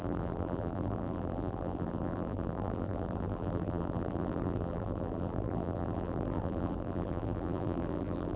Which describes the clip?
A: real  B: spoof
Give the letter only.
B